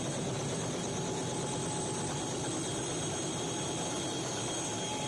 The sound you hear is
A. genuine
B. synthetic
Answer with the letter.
A